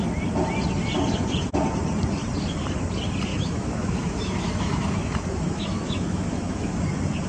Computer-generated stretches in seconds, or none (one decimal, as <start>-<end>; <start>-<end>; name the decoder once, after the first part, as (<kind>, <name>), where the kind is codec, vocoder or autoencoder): 3.3-6.8 (autoencoder, DAC-VAE)

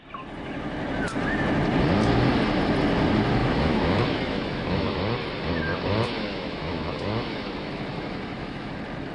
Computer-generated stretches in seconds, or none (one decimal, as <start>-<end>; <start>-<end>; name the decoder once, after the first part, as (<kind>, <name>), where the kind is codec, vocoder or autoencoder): 3.4-5.0 (autoencoder, DAC-VAE); 5.7-8.7